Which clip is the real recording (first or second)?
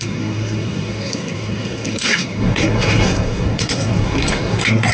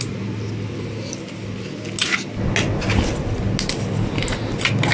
second